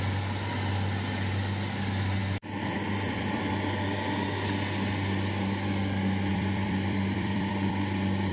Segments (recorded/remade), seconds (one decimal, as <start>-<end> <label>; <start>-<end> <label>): 0.0-2.2 recorded; 2.2-3.5 remade; 3.5-6.3 recorded; 6.3-8.3 remade

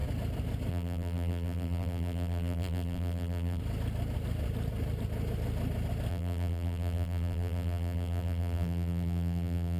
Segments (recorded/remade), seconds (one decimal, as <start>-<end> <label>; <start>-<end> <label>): 0.0-0.7 recorded; 0.7-3.6 remade; 3.6-6.1 recorded; 6.1-9.8 remade